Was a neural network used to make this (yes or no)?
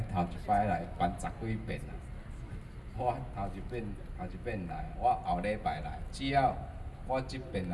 no